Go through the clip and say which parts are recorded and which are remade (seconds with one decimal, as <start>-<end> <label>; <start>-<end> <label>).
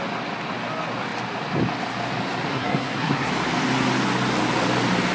0.0-2.5 recorded; 2.5-3.3 remade; 3.3-5.1 recorded